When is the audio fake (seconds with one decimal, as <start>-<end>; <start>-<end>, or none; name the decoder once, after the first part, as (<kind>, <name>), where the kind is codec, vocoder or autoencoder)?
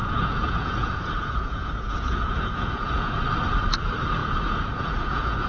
0.0-3.2 (vocoder, Vocos); 4.2-5.5